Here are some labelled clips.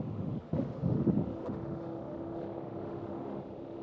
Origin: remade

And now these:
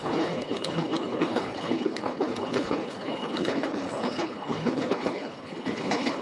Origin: remade